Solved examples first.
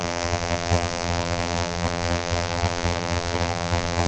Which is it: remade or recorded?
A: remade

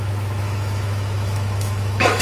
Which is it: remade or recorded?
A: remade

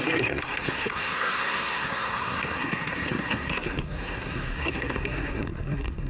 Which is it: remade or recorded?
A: remade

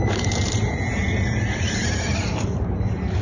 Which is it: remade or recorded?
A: remade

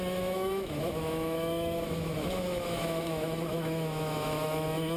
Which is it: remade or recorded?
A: remade